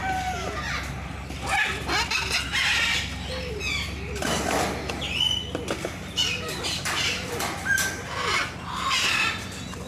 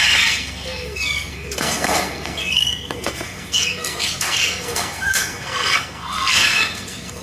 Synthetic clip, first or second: second